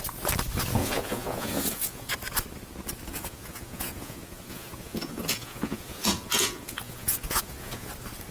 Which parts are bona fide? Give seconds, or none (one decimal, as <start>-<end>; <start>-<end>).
0.0-0.8; 2.1-3.1; 7.9-8.3